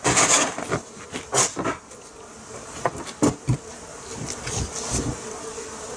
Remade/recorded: recorded